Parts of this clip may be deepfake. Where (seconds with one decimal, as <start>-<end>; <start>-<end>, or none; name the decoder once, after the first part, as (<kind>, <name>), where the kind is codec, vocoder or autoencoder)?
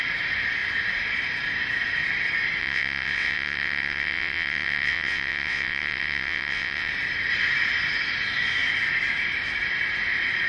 2.6-6.9 (vocoder, WaveNeXt)